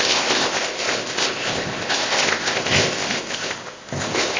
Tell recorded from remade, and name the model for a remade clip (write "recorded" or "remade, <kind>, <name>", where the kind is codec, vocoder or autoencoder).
remade, codec, ZipCodec